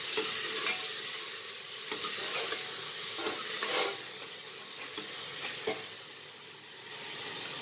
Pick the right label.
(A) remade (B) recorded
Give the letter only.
B